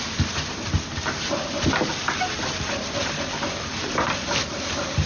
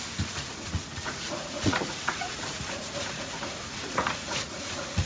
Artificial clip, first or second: second